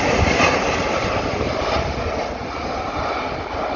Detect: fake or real real